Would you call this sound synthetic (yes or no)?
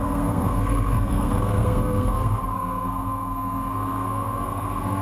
yes